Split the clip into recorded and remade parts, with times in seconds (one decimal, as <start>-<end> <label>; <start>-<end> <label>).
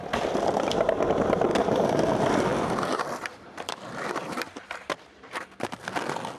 0.0-0.7 remade; 0.7-1.5 recorded; 1.5-2.0 remade; 2.0-2.5 recorded; 2.5-6.0 remade; 6.0-6.4 recorded